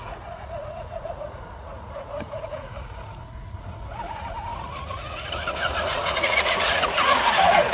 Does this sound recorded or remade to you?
remade